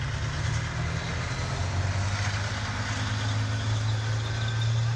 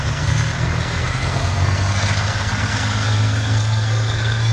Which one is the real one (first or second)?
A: first